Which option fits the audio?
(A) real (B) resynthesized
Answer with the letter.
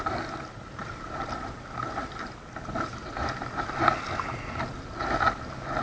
A